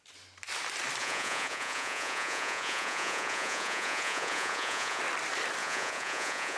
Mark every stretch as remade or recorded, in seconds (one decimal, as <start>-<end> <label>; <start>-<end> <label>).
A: 0.0-1.0 recorded; 1.0-5.0 remade; 5.0-5.6 recorded; 5.6-6.6 remade